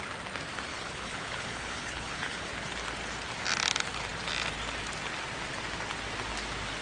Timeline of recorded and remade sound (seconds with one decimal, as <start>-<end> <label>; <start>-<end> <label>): 0.0-0.7 recorded; 0.7-2.5 remade; 2.5-6.8 recorded